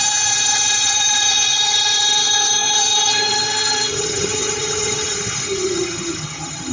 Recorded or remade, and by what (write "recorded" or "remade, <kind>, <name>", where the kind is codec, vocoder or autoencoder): remade, vocoder, HiFi-GAN